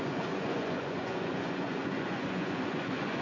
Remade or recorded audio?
remade